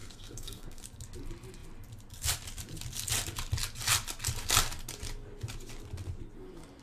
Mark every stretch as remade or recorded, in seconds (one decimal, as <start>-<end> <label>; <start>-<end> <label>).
0.0-0.8 remade; 0.8-6.8 recorded